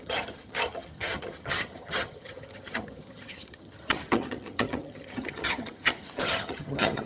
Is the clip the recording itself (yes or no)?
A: no